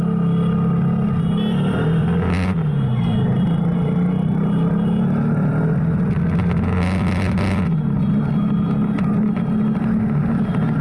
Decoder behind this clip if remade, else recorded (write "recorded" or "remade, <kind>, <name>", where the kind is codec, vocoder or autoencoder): recorded